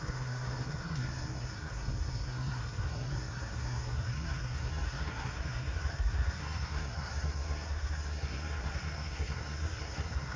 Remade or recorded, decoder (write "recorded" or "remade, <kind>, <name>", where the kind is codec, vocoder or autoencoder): remade, codec, SNAC